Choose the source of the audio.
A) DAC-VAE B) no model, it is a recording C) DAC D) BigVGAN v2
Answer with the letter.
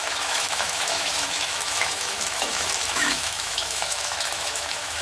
A